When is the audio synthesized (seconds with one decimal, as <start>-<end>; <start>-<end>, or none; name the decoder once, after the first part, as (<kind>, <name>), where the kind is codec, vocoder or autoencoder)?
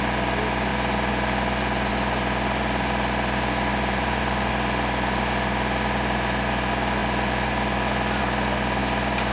3.7-4.5 (vocoder, BigVGAN v2)